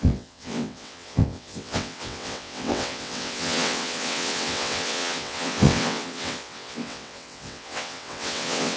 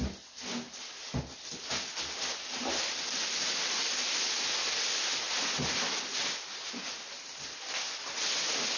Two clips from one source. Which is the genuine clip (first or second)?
second